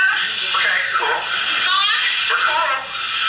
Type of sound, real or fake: real